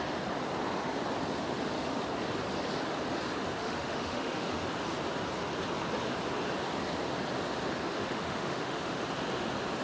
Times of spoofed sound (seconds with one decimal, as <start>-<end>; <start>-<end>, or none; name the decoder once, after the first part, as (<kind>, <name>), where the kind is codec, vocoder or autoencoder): 3.6-4.6 (autoencoder, DAC-VAE); 7.9-9.0